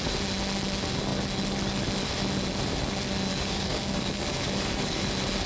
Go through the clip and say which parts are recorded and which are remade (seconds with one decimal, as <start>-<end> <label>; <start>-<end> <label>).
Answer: 0.0-3.3 recorded; 3.3-5.1 remade; 5.1-5.5 recorded